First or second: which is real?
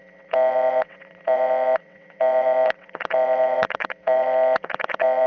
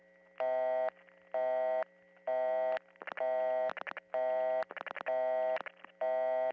second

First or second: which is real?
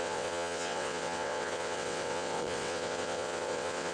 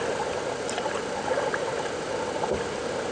second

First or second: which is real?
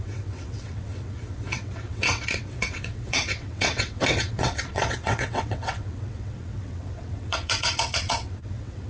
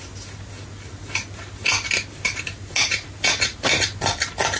second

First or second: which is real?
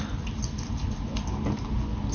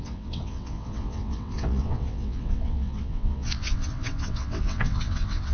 first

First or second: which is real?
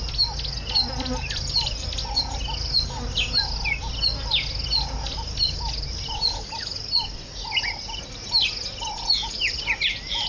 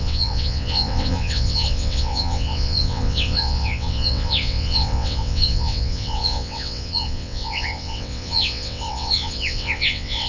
first